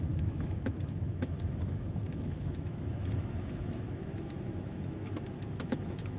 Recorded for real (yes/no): no